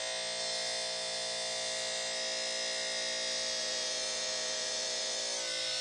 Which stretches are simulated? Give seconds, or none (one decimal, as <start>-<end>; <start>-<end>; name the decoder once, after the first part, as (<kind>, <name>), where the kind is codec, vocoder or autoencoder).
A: 3.6-5.2 (vocoder, Vocos)